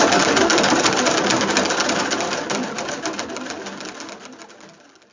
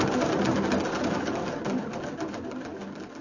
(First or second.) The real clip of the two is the second